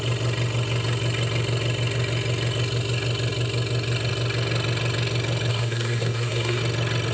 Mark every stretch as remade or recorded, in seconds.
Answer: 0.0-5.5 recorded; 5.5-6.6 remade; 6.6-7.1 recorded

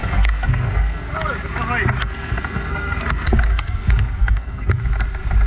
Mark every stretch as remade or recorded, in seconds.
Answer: 0.0-1.1 remade; 1.1-2.0 recorded; 2.0-4.8 remade; 4.8-5.5 recorded